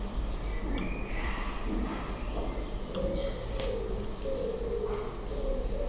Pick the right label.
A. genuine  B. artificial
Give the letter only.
A